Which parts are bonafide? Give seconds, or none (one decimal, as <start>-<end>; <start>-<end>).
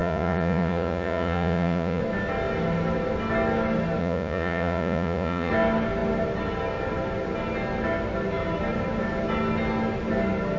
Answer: 2.0-4.0; 5.5-10.6